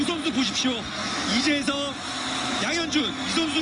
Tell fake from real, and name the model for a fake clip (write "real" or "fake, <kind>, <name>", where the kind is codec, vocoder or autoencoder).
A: real